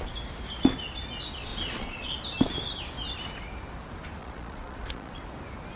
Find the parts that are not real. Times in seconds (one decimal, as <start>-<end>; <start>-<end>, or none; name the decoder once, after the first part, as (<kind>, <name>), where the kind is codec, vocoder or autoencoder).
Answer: 1.5-2.1 (vocoder, Vocos); 4.2-5.2

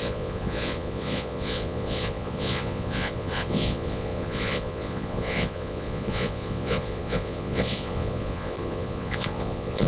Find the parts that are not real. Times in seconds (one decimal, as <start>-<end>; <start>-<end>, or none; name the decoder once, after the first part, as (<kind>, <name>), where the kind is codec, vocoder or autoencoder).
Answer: 0.0-9.9 (vocoder, Vocos)

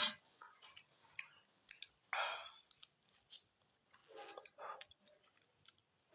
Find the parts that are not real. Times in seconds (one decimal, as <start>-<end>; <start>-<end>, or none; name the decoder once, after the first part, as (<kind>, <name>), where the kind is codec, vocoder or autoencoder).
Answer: 0.0-0.6 (vocoder, Vocos)

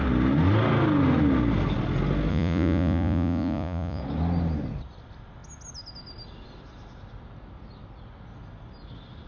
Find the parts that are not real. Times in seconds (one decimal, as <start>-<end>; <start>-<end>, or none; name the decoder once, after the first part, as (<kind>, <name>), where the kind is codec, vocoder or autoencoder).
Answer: 2.3-4.0 (vocoder, Vocos)

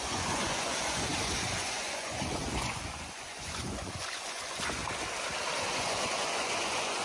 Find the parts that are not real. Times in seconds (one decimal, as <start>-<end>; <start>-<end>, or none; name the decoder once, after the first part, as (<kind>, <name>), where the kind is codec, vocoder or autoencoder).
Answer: 0.0-4.8 (vocoder, Vocos); 5.7-7.0